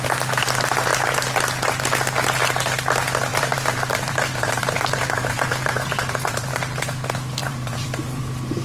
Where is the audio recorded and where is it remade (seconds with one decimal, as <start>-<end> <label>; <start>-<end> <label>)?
0.0-3.3 recorded; 3.3-6.6 remade; 6.6-7.4 recorded; 7.4-8.2 remade; 8.2-8.6 recorded